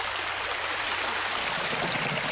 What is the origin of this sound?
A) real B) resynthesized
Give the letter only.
A